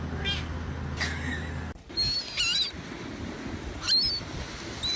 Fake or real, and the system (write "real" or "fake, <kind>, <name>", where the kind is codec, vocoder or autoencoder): real